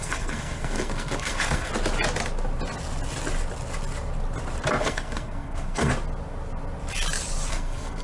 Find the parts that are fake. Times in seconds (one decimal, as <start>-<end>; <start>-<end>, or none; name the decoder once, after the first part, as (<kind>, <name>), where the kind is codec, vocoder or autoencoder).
0.0-1.7 (codec, SNAC); 4.8-5.9; 7.5-8.0